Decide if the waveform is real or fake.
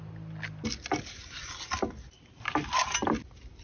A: real